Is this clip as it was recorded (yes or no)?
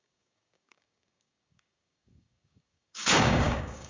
no